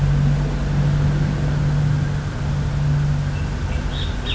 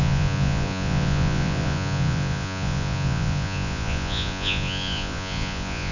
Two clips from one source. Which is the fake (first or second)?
second